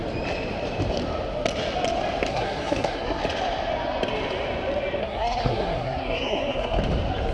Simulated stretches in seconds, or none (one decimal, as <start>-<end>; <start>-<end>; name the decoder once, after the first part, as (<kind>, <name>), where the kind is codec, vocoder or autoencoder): 2.3-3.2 (codec, SNAC); 5.0-6.8